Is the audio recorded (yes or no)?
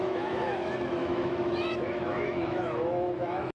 no